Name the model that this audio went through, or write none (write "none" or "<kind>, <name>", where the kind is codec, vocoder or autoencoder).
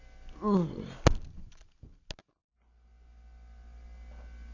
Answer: none